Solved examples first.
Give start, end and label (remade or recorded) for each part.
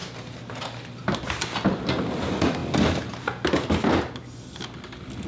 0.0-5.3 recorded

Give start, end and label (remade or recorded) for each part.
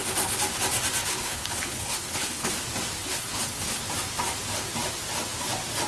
0.0-1.0 recorded; 1.0-2.5 remade; 2.5-3.0 recorded; 3.0-3.8 remade; 3.8-5.9 recorded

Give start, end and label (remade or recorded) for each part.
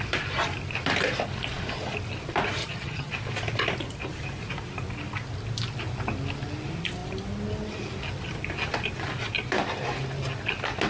0.0-2.6 recorded; 2.6-3.1 remade; 3.1-10.9 recorded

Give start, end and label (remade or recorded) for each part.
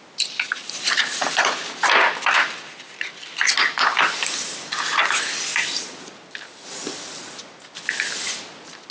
0.0-8.9 recorded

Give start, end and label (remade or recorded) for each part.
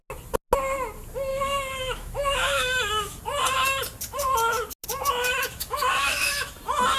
0.0-1.3 recorded; 1.3-3.2 remade; 3.2-5.2 recorded; 5.2-6.5 remade; 6.5-7.0 recorded